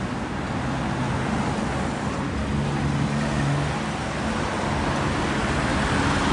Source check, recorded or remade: recorded